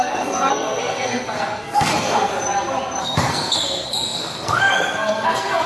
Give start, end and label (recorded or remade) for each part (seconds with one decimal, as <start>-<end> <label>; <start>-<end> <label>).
0.0-2.3 remade; 2.3-3.0 recorded; 3.0-5.7 remade